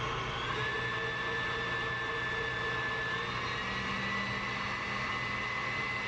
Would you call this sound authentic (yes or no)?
yes